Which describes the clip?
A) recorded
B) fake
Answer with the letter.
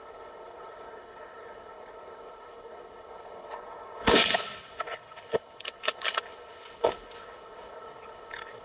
B